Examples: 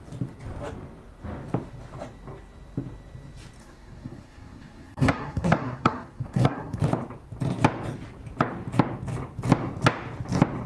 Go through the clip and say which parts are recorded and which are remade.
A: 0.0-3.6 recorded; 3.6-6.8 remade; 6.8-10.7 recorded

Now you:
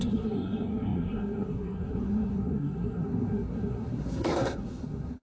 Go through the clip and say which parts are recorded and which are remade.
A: 0.0-5.2 remade

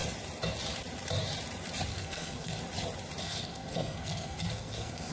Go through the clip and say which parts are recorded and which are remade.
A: 0.0-1.9 recorded; 1.9-2.6 remade; 2.6-3.2 recorded; 3.2-5.1 remade

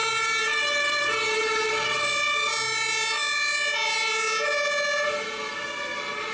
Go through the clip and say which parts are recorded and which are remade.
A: 0.0-6.3 recorded

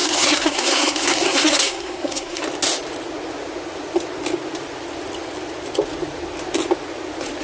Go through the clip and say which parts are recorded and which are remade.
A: 0.0-2.4 remade; 2.4-7.4 recorded

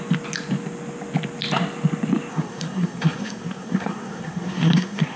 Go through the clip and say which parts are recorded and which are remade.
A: 0.0-2.3 recorded; 2.3-5.2 remade

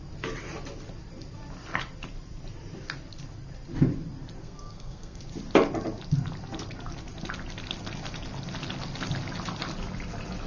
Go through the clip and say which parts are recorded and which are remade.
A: 0.0-4.4 recorded; 4.4-5.2 remade; 5.2-10.5 recorded

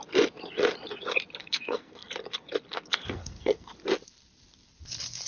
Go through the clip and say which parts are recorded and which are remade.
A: 0.0-1.4 recorded; 1.4-2.1 remade; 2.1-2.7 recorded; 2.7-3.7 remade; 3.7-5.3 recorded